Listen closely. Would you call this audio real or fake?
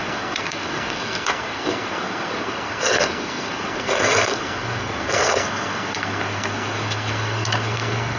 fake